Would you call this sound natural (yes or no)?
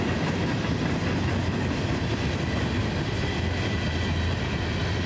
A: yes